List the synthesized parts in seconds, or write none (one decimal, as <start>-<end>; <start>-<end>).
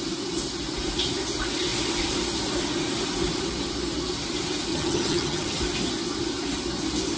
4.7-5.6